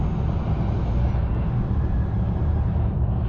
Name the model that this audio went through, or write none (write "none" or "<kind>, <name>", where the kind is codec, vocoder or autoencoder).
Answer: none